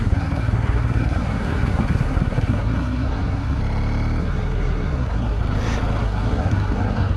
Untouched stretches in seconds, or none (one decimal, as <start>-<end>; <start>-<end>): 3.6-4.2; 5.4-6.0